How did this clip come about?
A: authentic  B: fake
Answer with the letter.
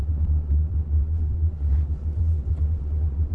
B